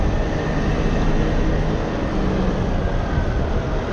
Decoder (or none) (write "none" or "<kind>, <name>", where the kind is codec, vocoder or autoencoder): none